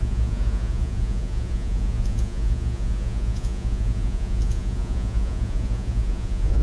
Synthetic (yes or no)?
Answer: yes